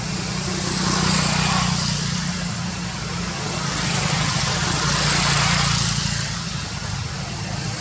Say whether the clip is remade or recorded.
recorded